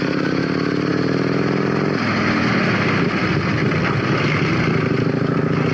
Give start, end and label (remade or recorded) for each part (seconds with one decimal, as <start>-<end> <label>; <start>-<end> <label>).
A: 0.0-3.2 recorded; 3.2-4.5 remade; 4.5-5.7 recorded